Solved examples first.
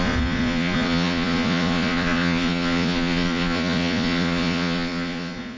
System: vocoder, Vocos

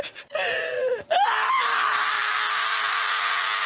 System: none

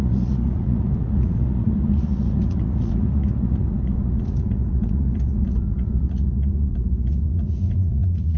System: vocoder, Vocos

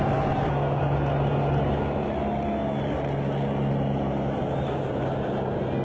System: none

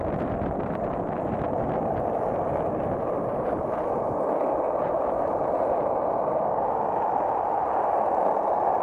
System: none